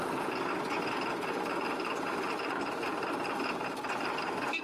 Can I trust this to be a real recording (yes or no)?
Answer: yes